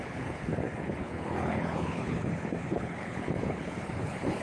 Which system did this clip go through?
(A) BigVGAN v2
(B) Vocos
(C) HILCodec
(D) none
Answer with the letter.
C